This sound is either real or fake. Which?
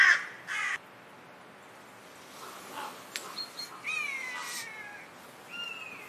real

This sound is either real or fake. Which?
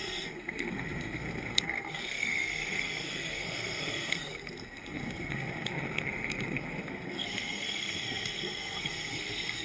fake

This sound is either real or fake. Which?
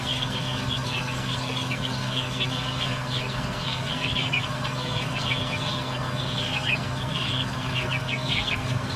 fake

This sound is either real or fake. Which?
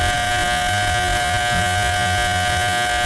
real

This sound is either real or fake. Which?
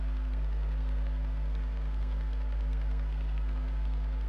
fake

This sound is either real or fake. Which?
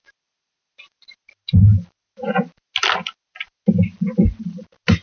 real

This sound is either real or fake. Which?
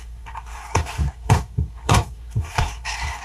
fake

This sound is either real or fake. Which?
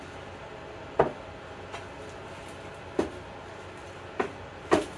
real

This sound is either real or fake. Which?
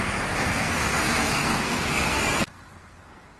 fake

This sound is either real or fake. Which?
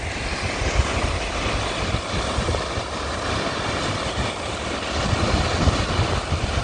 real